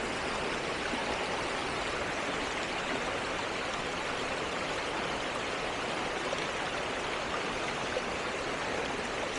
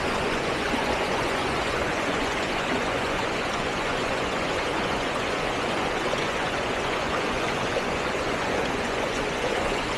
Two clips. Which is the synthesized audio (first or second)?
second